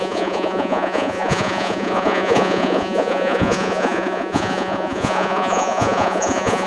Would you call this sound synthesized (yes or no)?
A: yes